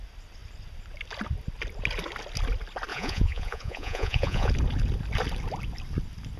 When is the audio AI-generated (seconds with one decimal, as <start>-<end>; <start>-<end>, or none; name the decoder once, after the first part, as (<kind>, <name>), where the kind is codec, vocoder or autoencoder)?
2.9-4.5 (vocoder, Vocos)